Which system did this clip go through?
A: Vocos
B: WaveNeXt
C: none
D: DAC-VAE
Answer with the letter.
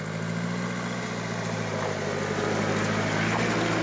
C